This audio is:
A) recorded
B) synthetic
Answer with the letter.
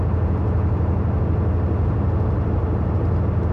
A